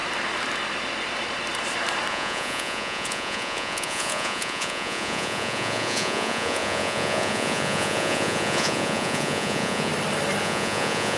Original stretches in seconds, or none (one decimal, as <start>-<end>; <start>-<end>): 0.0-2.1; 9.9-10.4